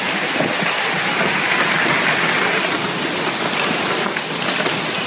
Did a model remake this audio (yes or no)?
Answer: no